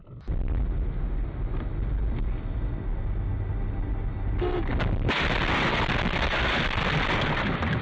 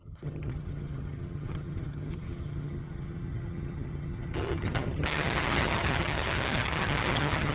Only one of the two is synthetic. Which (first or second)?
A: second